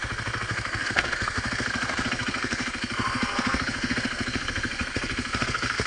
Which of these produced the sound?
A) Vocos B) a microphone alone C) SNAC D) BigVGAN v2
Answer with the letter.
C